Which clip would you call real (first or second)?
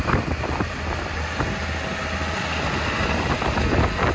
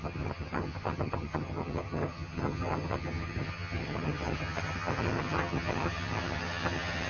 first